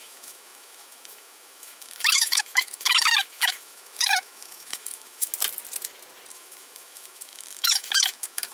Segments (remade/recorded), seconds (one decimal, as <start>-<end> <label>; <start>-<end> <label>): 0.0-5.3 remade; 5.3-6.3 recorded; 6.3-8.5 remade